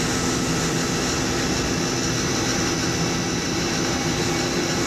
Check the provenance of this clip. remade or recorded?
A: recorded